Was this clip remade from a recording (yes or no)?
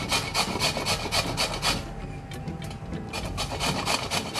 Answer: no